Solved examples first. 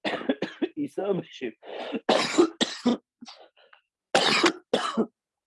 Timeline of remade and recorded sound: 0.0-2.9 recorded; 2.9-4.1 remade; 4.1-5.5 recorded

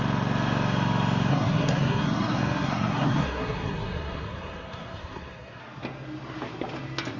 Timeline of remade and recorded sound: 0.0-1.3 recorded; 1.3-5.6 remade; 5.6-7.2 recorded